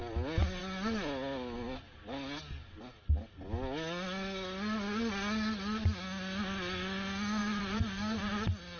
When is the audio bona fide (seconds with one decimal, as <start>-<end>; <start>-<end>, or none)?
0.0-7.4; 8.3-8.8